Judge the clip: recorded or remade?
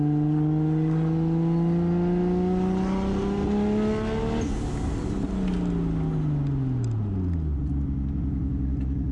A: recorded